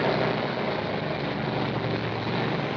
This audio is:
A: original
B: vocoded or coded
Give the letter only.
A